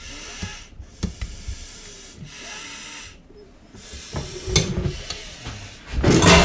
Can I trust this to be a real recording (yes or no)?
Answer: yes